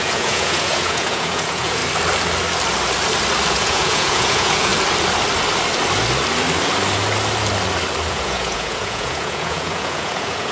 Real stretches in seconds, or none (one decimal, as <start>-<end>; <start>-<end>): 1.8-3.5; 4.7-8.1